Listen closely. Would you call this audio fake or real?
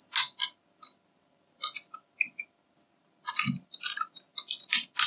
real